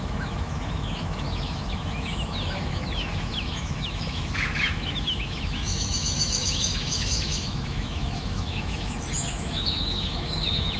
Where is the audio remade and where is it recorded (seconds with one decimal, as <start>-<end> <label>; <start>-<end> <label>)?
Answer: 0.0-10.8 remade